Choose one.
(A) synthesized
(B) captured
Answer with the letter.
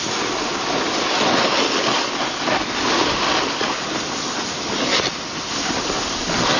B